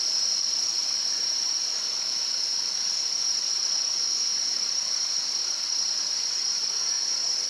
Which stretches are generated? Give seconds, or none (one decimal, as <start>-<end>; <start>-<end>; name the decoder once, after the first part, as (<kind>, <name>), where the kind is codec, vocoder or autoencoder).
0.0-0.8 (vocoder, BigVGAN v2); 4.5-7.5